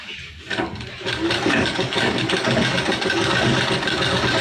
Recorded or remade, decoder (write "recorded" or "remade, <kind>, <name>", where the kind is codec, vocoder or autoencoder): remade, codec, DAC